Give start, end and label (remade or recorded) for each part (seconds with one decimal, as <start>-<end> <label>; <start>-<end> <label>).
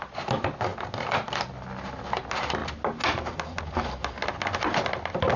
0.0-5.4 recorded